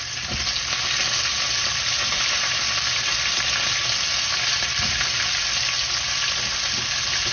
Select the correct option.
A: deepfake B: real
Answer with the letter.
B